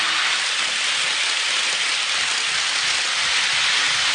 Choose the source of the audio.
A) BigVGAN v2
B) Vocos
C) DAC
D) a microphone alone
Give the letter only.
D